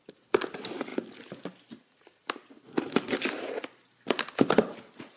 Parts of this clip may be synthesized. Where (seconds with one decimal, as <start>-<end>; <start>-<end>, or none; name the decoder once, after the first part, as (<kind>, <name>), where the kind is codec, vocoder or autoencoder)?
none